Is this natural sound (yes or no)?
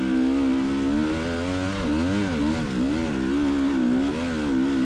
yes